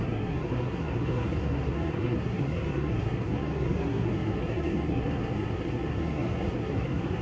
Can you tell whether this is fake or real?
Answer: fake